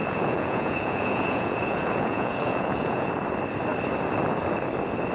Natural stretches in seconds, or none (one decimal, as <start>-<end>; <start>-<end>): 3.1-5.1